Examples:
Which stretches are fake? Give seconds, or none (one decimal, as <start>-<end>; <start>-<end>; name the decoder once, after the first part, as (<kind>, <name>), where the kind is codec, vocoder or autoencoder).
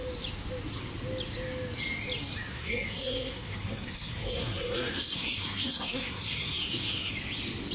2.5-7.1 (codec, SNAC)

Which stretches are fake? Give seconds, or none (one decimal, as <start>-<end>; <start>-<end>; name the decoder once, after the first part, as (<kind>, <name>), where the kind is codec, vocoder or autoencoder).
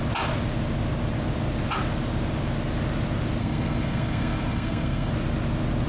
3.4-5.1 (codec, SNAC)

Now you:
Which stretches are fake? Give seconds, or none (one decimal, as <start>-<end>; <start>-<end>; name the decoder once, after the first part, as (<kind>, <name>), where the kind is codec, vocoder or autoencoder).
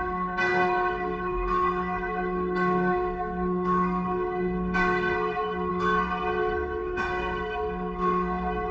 0.0-8.7 (codec, SNAC)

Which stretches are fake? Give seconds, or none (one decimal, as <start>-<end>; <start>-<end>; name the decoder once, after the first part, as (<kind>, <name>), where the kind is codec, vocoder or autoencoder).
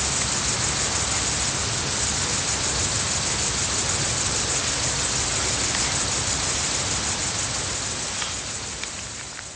none